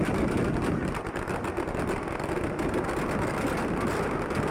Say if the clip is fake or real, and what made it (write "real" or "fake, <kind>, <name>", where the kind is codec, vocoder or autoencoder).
real